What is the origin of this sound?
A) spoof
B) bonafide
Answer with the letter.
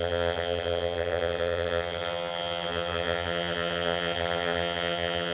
A